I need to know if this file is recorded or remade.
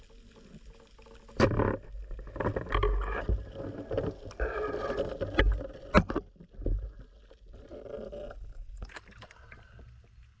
recorded